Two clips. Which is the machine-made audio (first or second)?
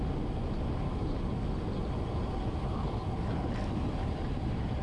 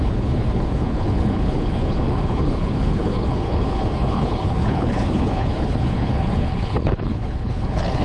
second